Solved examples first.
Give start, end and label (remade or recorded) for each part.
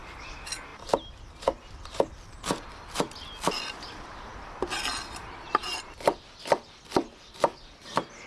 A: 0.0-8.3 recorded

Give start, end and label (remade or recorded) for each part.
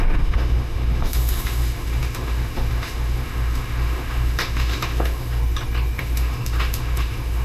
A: 0.0-5.4 remade; 5.4-6.0 recorded; 6.0-7.4 remade